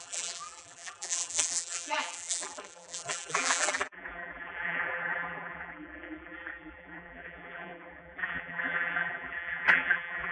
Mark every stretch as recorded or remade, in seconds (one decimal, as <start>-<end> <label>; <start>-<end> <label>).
0.0-10.3 remade